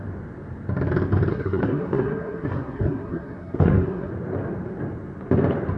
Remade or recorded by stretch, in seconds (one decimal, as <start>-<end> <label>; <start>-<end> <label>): 0.0-1.3 recorded; 1.3-4.1 remade; 4.1-5.8 recorded